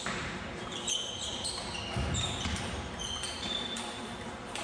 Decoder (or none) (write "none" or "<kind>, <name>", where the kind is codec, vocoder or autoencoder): vocoder, BigVGAN v2